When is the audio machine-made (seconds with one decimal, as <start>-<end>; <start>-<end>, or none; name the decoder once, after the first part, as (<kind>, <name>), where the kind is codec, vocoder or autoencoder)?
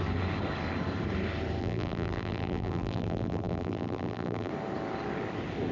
1.6-4.5 (vocoder, BigVGAN v2)